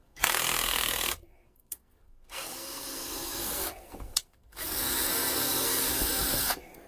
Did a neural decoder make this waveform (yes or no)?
yes